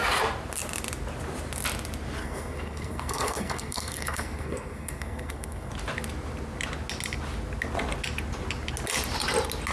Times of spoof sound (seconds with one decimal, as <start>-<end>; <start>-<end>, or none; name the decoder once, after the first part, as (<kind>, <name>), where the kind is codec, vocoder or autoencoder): 2.2-5.7 (codec, SNAC)